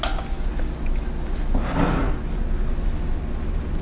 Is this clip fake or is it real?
real